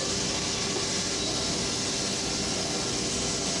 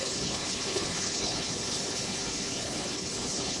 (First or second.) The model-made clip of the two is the second